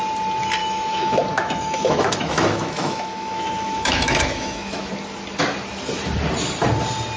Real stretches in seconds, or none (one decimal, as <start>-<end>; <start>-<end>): 0.0-0.6; 4.9-7.2